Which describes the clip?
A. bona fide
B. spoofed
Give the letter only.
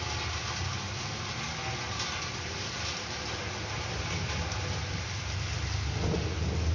A